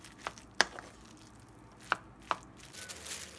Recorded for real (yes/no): yes